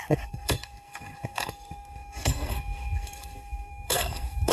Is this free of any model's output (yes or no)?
no